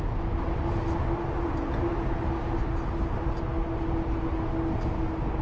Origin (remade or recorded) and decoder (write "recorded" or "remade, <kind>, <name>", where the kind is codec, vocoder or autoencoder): recorded